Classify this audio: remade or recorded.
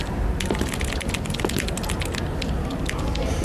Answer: recorded